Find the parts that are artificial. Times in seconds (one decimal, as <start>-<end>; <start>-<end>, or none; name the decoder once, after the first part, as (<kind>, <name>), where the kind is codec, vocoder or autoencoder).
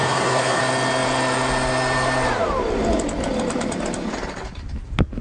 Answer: 0.0-0.6 (codec, SNAC)